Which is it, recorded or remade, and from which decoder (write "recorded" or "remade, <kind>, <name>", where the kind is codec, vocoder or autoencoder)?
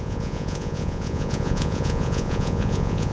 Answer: remade, vocoder, Vocos